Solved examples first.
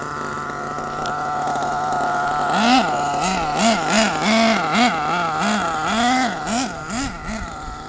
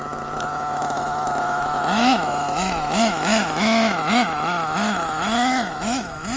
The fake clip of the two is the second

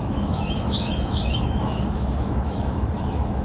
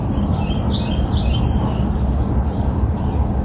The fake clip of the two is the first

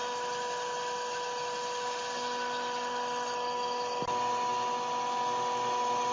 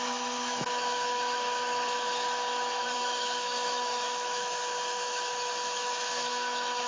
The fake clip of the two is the second